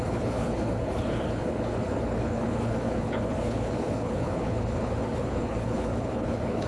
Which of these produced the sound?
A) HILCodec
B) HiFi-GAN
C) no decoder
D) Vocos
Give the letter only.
A